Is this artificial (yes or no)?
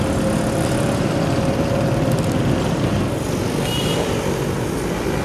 no